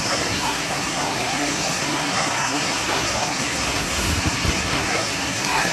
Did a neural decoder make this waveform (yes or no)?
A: yes